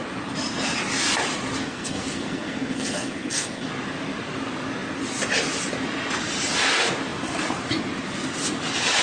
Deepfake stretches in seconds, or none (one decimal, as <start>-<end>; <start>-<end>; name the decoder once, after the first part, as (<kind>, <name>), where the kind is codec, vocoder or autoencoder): 1.6-3.7 (codec, SNAC)